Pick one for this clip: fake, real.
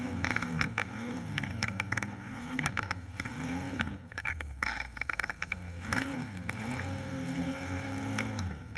fake